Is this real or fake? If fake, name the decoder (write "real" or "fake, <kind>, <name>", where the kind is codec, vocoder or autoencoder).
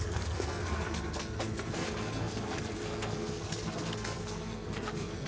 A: fake, codec, SNAC